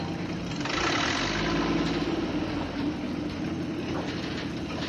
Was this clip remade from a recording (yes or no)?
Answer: no